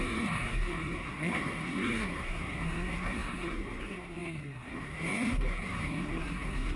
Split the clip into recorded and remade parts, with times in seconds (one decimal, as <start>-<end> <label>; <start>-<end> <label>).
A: 0.0-6.8 remade